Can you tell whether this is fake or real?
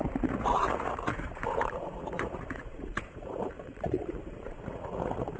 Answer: fake